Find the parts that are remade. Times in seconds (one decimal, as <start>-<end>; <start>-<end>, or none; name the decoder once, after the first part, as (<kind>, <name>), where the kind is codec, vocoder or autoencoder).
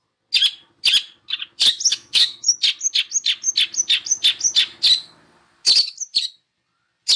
1.9-2.6 (autoencoder, DAC-VAE)